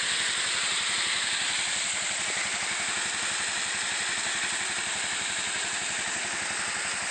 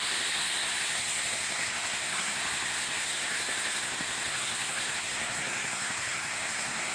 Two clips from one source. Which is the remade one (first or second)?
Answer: second